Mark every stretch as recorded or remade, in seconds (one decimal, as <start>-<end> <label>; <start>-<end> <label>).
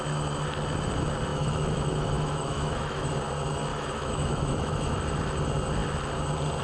0.0-1.3 recorded; 1.3-3.1 remade; 3.1-3.7 recorded; 3.7-4.9 remade; 4.9-6.6 recorded